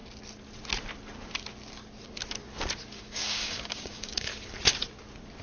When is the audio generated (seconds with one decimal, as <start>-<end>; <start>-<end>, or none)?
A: 3.0-4.3